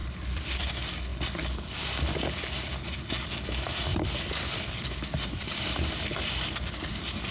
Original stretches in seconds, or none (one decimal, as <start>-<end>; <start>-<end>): 0.7-1.1; 2.2-3.9; 6.6-7.3